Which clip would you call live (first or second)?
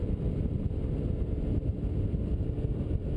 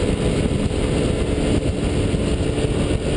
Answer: second